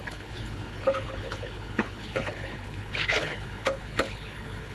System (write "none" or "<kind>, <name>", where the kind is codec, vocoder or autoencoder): codec, HILCodec